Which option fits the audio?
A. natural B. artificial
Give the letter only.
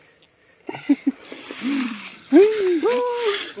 A